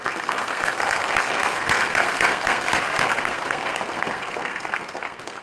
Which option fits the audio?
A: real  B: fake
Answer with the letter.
B